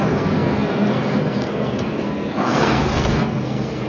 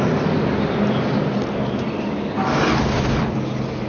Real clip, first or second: second